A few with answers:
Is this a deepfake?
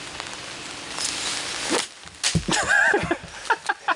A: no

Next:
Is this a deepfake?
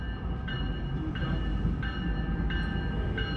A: no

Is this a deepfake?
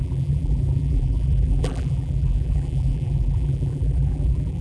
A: yes